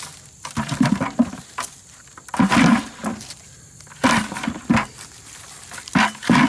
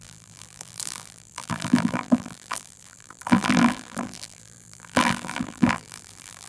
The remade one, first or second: second